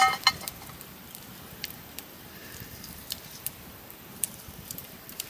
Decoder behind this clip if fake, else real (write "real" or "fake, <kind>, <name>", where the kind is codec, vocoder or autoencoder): fake, vocoder, BigVGAN v2